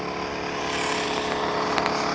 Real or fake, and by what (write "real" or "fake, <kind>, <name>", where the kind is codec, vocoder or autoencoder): real